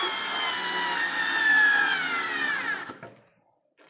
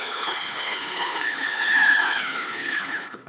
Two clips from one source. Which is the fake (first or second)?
second